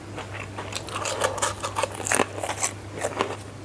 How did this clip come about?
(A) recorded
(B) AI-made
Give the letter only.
A